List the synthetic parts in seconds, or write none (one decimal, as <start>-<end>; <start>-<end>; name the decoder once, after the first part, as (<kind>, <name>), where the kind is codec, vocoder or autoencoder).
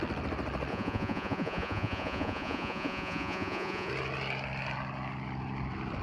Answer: 0.7-3.9 (vocoder, Vocos)